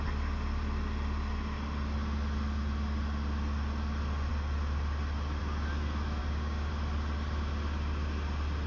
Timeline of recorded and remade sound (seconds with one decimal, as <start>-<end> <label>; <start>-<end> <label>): 0.0-6.2 recorded; 6.2-6.7 remade; 6.7-8.7 recorded